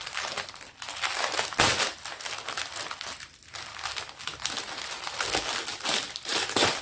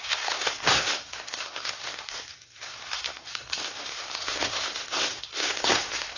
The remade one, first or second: second